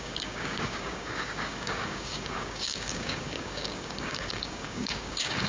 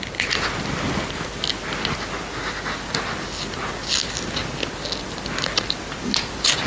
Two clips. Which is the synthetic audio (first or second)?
first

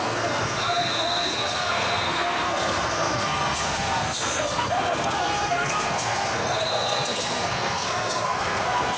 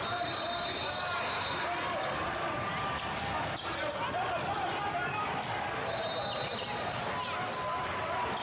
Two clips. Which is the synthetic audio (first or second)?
first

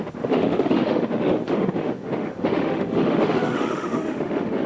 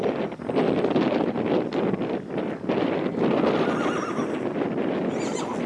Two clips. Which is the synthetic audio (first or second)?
first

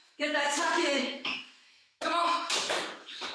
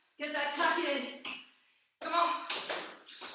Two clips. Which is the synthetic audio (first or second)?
first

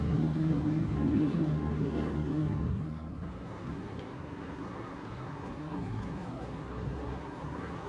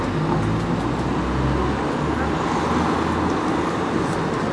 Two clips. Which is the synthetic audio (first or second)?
first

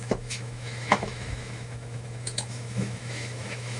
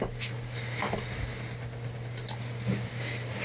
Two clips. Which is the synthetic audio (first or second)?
first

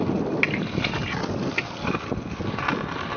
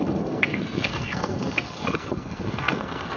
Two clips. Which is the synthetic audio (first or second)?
second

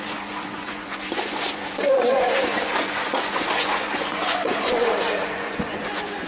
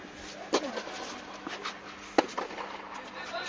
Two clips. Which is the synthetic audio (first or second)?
first